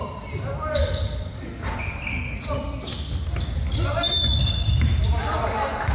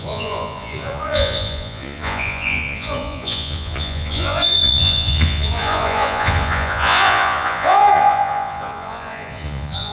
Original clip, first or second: first